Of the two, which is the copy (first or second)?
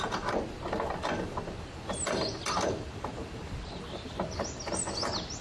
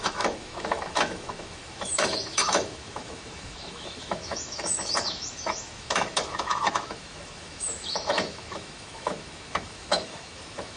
second